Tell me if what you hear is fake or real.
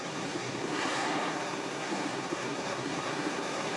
fake